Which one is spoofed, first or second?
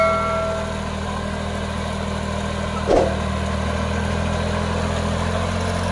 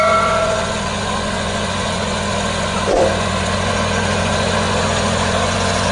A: second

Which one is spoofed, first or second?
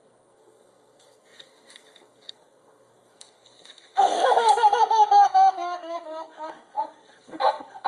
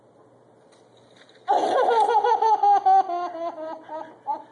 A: first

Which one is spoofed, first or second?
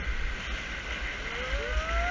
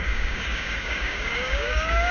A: second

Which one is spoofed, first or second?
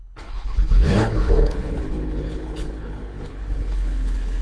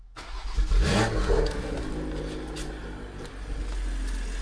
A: first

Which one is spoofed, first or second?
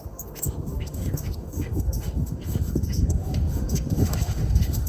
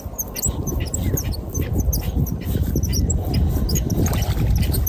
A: first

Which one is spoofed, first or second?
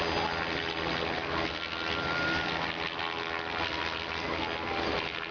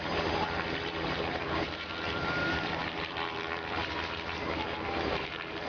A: second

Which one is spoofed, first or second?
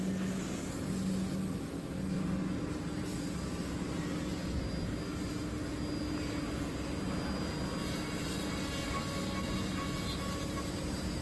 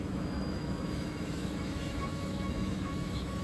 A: second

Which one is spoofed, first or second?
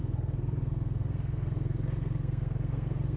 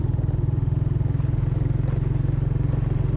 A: first